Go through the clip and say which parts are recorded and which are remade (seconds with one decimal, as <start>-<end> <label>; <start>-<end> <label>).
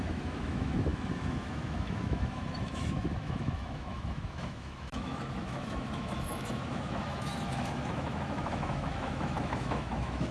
0.0-10.3 remade